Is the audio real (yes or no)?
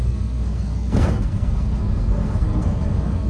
no